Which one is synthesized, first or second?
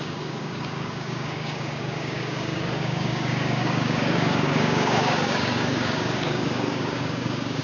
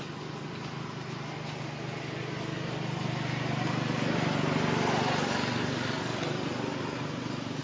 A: first